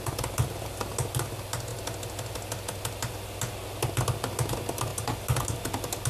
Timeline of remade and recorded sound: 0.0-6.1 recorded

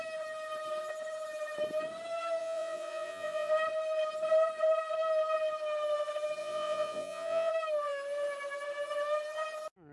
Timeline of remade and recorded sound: 0.0-2.4 recorded; 2.4-3.5 remade; 3.5-6.4 recorded; 6.4-7.5 remade; 7.5-9.9 recorded

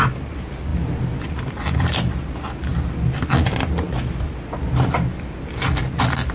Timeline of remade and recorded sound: 0.0-0.7 recorded; 0.7-1.4 remade; 1.4-6.3 recorded

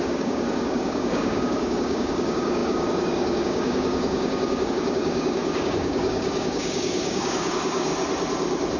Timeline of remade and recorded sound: 0.0-7.9 remade; 7.9-8.8 recorded

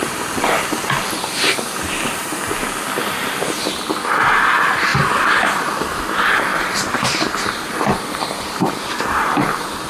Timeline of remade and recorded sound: 0.0-4.9 recorded; 4.9-6.0 remade; 6.0-6.5 recorded; 6.5-9.9 remade

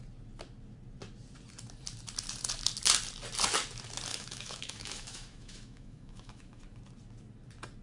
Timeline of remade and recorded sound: 0.0-4.1 recorded; 4.1-6.6 remade; 6.6-7.8 recorded

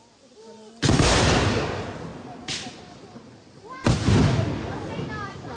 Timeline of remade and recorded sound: 0.0-5.6 recorded